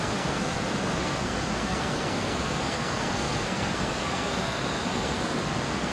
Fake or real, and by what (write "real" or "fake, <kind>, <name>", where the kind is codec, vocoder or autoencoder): fake, codec, SNAC